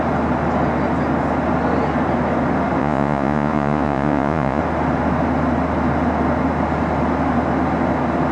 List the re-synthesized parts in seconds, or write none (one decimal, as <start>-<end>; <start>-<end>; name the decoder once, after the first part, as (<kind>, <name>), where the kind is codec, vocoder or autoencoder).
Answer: 2.8-4.6 (vocoder, Vocos)

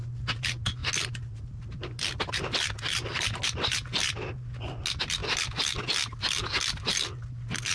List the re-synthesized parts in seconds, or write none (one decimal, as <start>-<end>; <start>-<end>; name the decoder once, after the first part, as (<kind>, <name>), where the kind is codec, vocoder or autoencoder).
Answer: none

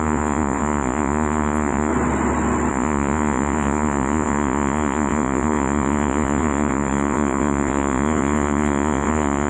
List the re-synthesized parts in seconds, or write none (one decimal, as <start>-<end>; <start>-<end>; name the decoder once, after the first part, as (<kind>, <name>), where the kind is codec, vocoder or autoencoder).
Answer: 0.0-1.9 (vocoder, Vocos); 2.7-9.5

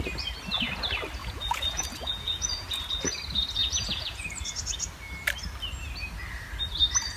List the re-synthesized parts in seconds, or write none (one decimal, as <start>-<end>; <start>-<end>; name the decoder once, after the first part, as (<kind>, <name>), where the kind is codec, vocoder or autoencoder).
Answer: 1.2-2.8 (vocoder, Vocos); 3.6-4.3